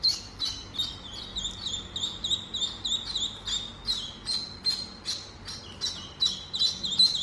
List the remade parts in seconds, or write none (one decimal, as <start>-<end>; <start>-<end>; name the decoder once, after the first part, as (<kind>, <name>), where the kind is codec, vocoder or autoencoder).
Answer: none